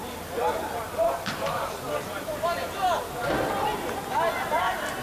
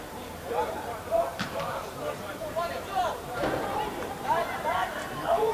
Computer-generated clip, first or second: second